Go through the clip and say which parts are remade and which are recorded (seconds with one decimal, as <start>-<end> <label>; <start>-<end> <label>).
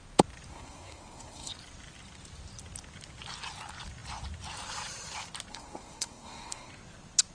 0.0-0.5 recorded; 0.5-1.5 remade; 1.5-5.5 recorded; 5.5-6.7 remade; 6.7-7.3 recorded